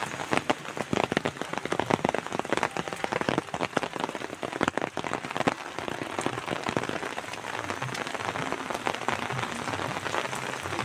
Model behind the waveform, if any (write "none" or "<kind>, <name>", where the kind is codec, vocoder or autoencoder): none